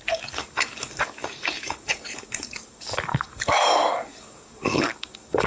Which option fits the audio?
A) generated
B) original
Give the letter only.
A